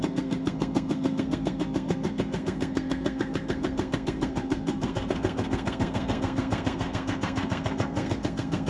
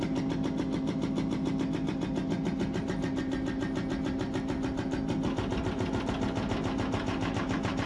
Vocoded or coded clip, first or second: first